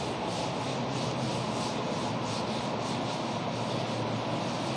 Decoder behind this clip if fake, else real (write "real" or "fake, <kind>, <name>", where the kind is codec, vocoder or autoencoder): real